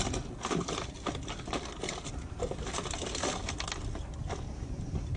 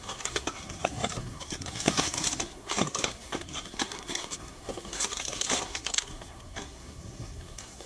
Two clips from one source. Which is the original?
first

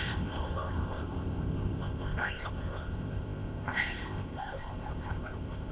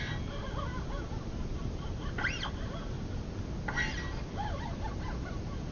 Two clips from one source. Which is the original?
second